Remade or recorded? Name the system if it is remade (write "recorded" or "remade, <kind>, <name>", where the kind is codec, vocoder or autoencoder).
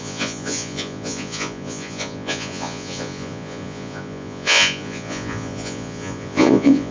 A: remade, vocoder, Vocos